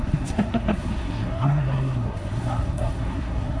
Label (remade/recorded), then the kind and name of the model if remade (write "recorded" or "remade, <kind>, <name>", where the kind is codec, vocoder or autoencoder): remade, codec, SNAC